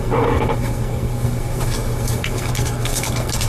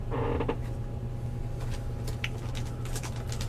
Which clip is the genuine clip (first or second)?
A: second